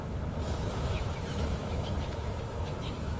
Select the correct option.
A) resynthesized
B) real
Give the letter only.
A